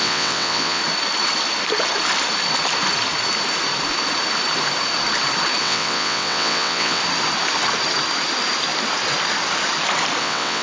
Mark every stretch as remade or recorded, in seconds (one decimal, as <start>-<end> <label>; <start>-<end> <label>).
0.0-0.8 remade; 0.8-5.6 recorded; 5.6-7.0 remade; 7.0-10.2 recorded; 10.2-10.6 remade